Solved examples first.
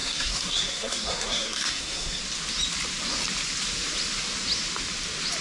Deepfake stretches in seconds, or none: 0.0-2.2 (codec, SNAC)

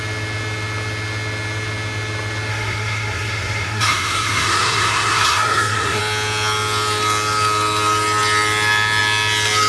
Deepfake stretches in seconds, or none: 2.5-6.0 (codec, SNAC)

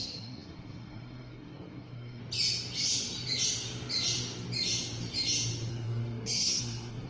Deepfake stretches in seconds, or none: 0.0-2.2 (codec, SNAC); 5.7-7.1

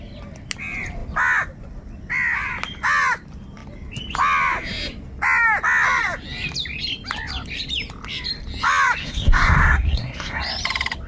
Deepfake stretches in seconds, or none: 9.0-10.4 (codec, SNAC)

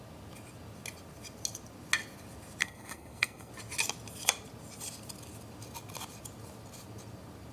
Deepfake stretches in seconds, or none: 2.6-3.5 (codec, SNAC)

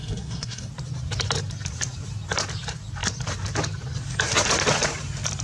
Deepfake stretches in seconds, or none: 0.0-0.7 (codec, SNAC)